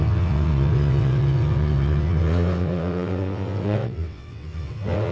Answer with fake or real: fake